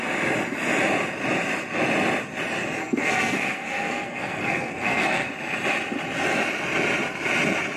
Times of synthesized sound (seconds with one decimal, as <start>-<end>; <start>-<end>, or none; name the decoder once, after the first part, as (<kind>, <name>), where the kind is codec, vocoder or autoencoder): 2.8-5.3 (codec, SNAC)